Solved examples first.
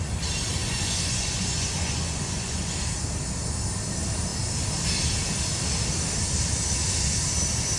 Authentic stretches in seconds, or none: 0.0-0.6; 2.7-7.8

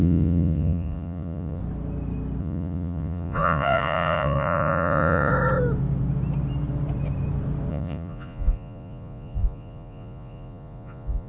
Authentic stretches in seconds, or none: 1.6-2.4; 5.3-7.7

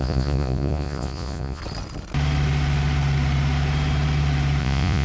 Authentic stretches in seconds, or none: 1.6-4.6

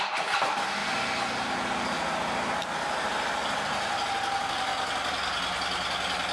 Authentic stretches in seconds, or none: 0.0-6.3

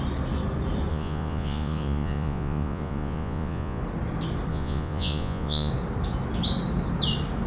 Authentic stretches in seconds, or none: 0.0-0.9; 3.8-4.5; 5.7-7.5

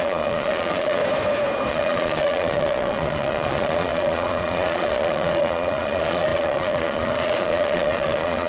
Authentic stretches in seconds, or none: 1.0-1.7